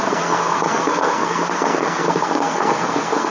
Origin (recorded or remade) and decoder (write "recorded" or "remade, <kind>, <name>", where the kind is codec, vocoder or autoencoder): remade, codec, SNAC